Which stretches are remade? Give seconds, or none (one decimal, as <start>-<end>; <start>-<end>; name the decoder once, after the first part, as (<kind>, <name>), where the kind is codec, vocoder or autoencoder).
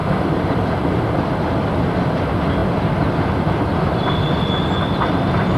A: 2.6-4.2 (vocoder, BigVGAN v2)